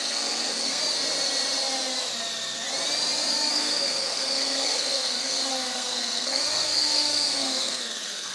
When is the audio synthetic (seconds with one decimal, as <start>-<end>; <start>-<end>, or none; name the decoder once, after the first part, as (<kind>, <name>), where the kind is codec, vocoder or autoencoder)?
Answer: 0.0-0.8 (codec, SNAC); 3.5-8.3